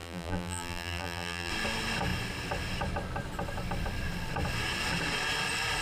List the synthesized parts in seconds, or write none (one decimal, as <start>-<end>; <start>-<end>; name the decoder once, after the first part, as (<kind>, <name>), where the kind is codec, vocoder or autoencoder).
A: 0.0-1.5 (vocoder, BigVGAN v2)